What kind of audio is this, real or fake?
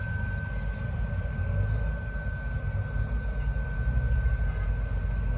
real